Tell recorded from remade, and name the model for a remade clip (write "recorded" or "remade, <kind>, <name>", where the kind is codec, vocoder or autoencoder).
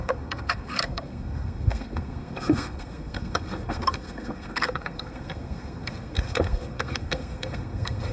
remade, codec, SNAC